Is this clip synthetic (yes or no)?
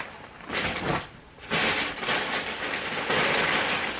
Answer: no